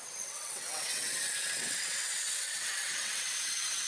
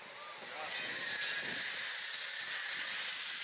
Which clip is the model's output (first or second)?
first